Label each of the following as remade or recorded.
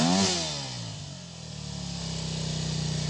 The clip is recorded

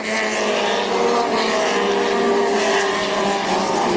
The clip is recorded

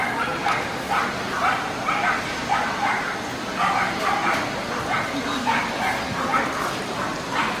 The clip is recorded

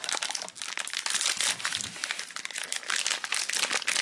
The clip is recorded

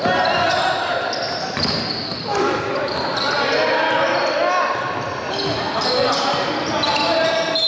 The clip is recorded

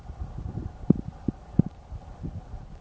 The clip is recorded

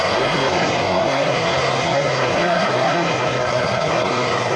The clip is remade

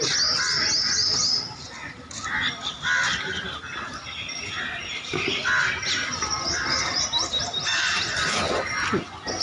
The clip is recorded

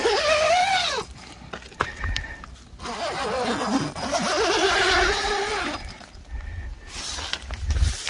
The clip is recorded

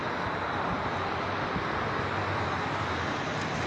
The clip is recorded